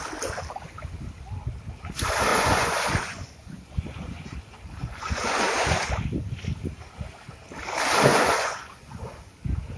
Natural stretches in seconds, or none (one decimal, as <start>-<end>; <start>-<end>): 0.0-2.3; 5.9-8.1; 9.3-9.8